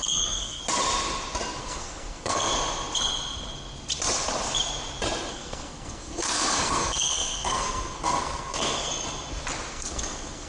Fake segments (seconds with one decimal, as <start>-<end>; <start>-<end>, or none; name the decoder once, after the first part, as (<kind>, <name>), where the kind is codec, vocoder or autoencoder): 0.0-0.6 (codec, SNAC); 1.6-2.5; 5.3-8.9; 9.7-10.5